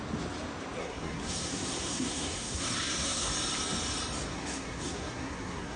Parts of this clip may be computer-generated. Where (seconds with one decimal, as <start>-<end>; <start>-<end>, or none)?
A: 0.8-3.3; 4.3-5.8